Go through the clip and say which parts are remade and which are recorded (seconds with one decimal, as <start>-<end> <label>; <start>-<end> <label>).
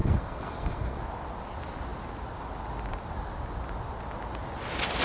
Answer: 0.0-1.0 remade; 1.0-5.0 recorded